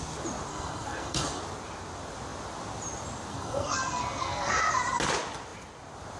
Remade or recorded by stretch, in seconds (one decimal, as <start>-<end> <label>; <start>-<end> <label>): 0.0-0.5 recorded; 0.5-1.4 remade; 1.4-3.3 recorded; 3.3-4.5 remade; 4.5-6.2 recorded